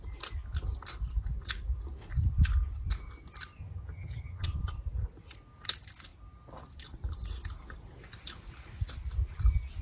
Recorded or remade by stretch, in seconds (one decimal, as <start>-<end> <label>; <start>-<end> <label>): 0.0-3.6 recorded; 3.6-4.6 remade; 4.6-9.8 recorded